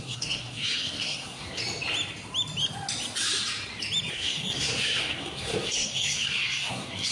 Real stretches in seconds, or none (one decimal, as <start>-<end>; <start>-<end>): 1.6-4.1